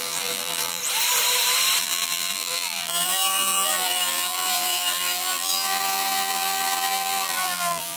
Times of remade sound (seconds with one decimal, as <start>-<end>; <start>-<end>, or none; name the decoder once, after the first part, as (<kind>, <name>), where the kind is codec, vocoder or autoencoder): 0.0-0.8 (vocoder, BigVGAN v2); 1.8-8.0